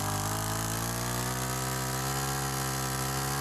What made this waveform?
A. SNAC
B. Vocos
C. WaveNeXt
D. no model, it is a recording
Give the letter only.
D